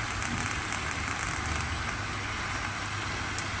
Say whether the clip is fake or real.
real